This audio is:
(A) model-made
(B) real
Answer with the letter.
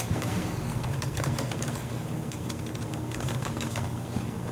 A